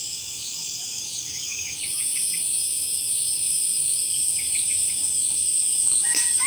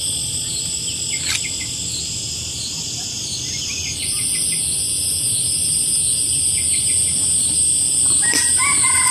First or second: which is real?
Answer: second